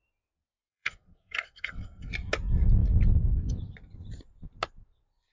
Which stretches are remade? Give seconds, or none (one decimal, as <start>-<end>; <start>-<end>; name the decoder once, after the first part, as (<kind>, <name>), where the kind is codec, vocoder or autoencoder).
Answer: 0.7-2.1 (codec, SNAC)